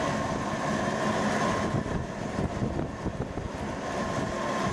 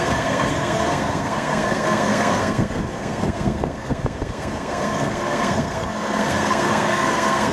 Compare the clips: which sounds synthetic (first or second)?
second